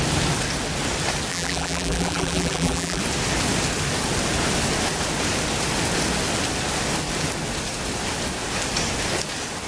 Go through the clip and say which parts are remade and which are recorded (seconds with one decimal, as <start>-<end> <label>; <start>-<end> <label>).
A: 0.0-1.3 recorded; 1.3-3.0 remade; 3.0-9.7 recorded